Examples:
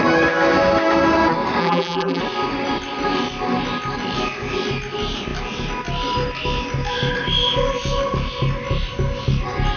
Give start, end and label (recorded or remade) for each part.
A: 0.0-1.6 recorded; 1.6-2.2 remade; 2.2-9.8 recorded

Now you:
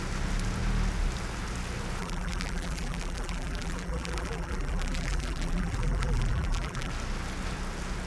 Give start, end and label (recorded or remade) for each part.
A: 0.0-2.0 recorded; 2.0-6.9 remade; 6.9-8.1 recorded

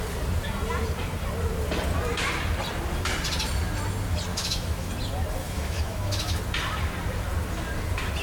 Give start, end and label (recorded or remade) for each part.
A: 0.0-4.3 recorded; 4.3-4.9 remade; 4.9-5.4 recorded; 5.4-6.4 remade; 6.4-8.2 recorded

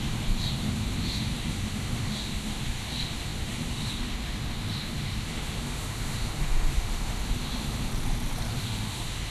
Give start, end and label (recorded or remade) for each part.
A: 0.0-7.9 remade; 7.9-8.5 recorded; 8.5-9.3 remade

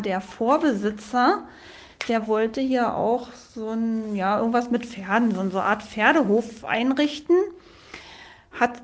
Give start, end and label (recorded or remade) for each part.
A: 0.0-1.9 recorded; 1.9-2.7 remade; 2.7-8.8 recorded

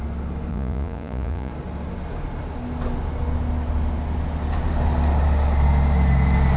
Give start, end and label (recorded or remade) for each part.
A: 0.0-0.5 recorded; 0.5-1.5 remade; 1.5-6.6 recorded

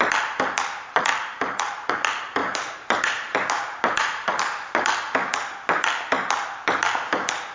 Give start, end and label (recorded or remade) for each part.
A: 0.0-1.1 recorded; 1.1-1.9 remade; 1.9-2.4 recorded; 2.4-4.4 remade; 4.4-7.5 recorded